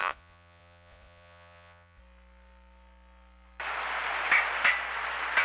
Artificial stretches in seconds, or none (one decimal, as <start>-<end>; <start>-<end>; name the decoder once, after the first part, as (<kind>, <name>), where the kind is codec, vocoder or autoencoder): 0.0-2.0 (vocoder, Vocos)

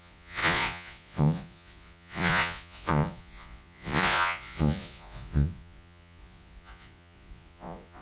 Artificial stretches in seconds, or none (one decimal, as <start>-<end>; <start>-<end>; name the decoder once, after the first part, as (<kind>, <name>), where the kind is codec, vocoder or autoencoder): 0.0-8.0 (vocoder, Vocos)

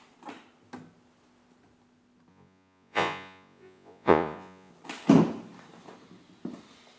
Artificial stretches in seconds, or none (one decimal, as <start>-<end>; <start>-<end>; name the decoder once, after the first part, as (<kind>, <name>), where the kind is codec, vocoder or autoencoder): 2.3-4.7 (vocoder, Vocos)

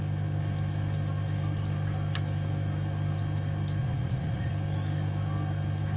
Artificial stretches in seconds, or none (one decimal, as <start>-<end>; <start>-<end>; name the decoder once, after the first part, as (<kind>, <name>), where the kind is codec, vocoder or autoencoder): 3.8-4.5 (vocoder, Vocos)

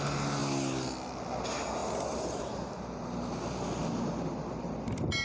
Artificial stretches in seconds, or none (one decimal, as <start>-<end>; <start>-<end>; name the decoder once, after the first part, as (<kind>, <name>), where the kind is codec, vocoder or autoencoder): none

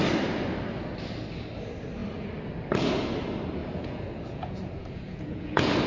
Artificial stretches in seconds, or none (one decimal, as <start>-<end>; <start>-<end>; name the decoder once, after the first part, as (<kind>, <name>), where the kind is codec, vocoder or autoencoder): 3.6-5.9 (vocoder, Vocos)

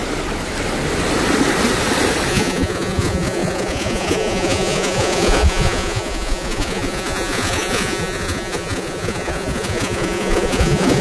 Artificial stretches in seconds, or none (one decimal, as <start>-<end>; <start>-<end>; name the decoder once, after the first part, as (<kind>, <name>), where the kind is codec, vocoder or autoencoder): 2.3-11.0 (vocoder, Vocos)

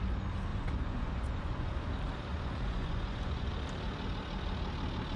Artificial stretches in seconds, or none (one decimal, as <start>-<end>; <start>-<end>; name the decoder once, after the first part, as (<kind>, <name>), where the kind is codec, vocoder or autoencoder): 0.5-1.9 (vocoder, Vocos); 2.3-3.5